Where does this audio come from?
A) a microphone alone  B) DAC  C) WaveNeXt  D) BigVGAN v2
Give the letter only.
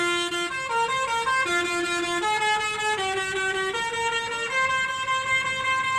A